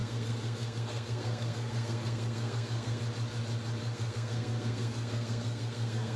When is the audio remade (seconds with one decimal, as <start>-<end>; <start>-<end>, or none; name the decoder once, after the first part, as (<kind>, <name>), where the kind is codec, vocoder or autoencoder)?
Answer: 0.0-3.0 (codec, SNAC); 3.8-6.2